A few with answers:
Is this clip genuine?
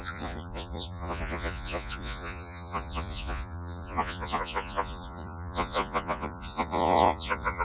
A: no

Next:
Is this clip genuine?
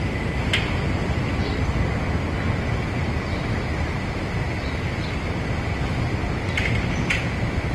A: yes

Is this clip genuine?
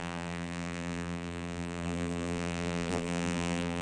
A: no